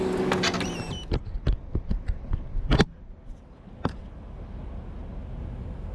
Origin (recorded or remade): recorded